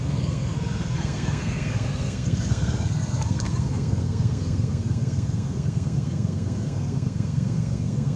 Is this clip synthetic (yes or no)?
yes